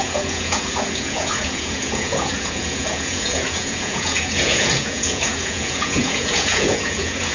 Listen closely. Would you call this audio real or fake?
fake